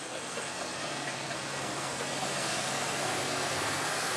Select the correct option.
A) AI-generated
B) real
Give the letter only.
A